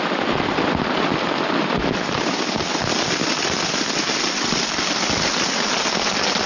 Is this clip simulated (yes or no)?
no